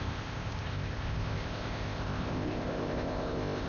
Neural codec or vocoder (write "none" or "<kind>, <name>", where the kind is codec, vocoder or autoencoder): codec, ZipCodec